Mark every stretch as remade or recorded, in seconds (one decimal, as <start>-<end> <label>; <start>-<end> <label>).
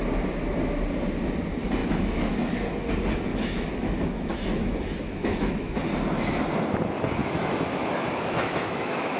0.0-1.8 recorded; 1.8-2.6 remade; 2.6-3.3 recorded; 3.3-5.9 remade; 5.9-7.2 recorded; 7.2-9.2 remade